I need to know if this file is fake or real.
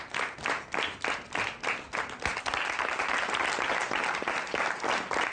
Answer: real